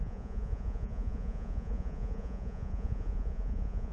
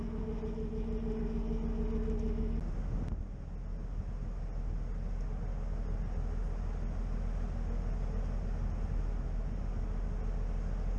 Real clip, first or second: second